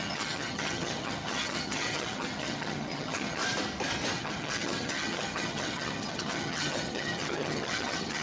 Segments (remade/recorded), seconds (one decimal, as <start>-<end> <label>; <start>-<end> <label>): 0.0-3.4 remade; 3.4-4.2 recorded; 4.2-8.2 remade